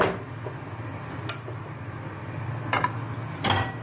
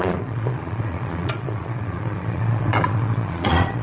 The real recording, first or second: first